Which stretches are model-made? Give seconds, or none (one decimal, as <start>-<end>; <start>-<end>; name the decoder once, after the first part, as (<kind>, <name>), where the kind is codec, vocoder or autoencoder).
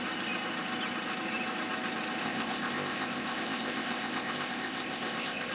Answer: 2.2-5.5 (codec, ZipCodec)